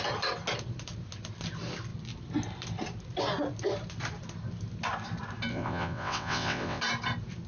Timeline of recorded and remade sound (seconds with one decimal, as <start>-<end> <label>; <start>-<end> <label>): 0.0-5.5 recorded; 5.5-6.8 remade; 6.8-7.5 recorded